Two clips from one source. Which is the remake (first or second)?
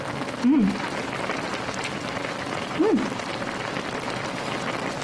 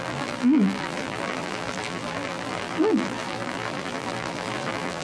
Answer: second